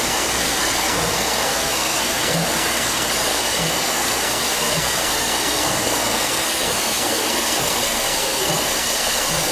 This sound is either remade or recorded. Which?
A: remade